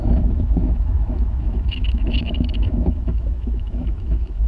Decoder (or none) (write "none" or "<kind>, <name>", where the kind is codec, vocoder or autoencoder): autoencoder, DAC-VAE